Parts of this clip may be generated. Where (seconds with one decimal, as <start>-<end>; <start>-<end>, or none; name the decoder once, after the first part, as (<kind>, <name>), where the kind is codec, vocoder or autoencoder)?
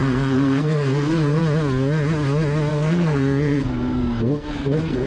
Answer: 0.0-1.4 (codec, SNAC); 2.7-5.1